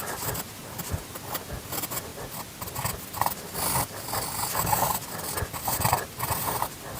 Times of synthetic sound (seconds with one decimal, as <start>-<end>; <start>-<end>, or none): none